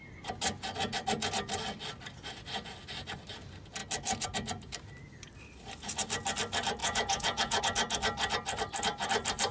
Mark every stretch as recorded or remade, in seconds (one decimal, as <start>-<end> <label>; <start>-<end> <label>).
0.0-6.8 recorded; 6.8-7.6 remade; 7.6-9.5 recorded